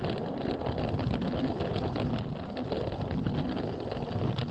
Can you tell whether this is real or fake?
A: real